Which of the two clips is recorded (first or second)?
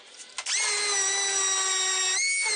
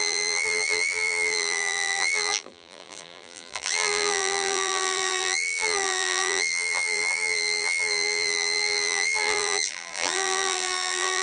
first